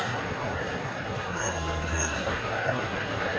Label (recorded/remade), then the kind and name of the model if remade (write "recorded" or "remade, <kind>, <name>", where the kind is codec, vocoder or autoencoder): remade, codec, SNAC